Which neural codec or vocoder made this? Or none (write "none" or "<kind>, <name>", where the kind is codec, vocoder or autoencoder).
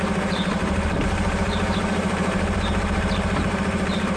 vocoder, BigVGAN v2